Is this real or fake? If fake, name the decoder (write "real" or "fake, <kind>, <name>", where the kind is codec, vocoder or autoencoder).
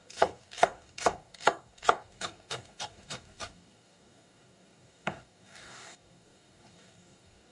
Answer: fake, codec, DAC